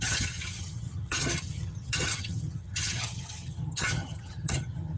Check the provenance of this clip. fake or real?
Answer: fake